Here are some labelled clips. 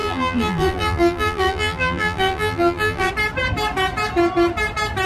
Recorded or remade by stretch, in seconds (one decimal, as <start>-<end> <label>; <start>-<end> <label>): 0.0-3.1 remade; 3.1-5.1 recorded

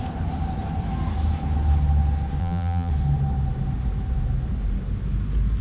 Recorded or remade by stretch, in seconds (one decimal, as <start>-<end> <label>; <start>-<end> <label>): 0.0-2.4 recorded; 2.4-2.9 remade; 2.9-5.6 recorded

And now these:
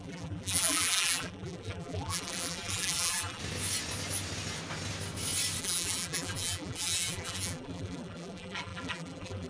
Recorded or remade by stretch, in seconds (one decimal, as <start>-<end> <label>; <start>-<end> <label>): 0.0-3.4 remade; 3.4-5.6 recorded; 5.6-9.5 remade

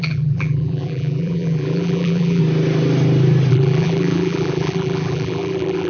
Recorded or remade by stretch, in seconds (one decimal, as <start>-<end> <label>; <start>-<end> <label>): 0.0-2.4 remade; 2.4-3.5 recorded; 3.5-5.9 remade

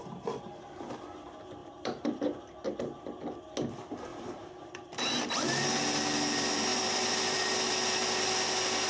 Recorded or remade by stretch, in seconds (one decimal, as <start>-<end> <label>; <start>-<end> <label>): 0.0-1.6 recorded; 1.6-2.4 remade; 2.4-4.1 recorded; 4.1-5.3 remade; 5.3-6.7 recorded; 6.7-7.7 remade; 7.7-8.9 recorded